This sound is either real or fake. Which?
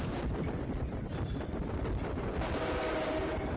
real